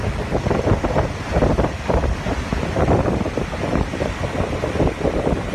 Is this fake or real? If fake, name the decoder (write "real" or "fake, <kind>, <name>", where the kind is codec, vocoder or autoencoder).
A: real